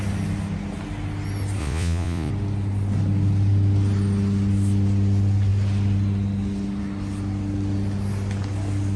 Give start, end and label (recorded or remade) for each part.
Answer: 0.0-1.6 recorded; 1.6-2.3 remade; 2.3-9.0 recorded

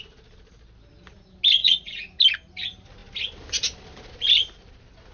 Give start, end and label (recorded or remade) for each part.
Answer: 0.0-1.6 recorded; 1.6-2.2 remade; 2.2-5.1 recorded

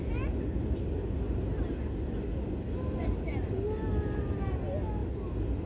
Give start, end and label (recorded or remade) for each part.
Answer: 0.0-5.0 recorded; 5.0-5.7 remade

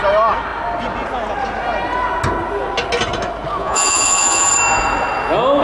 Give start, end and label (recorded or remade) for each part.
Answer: 0.0-3.6 recorded; 3.6-4.5 remade; 4.5-5.6 recorded

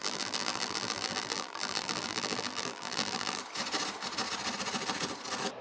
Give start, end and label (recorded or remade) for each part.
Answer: 0.0-3.4 remade; 3.4-5.6 recorded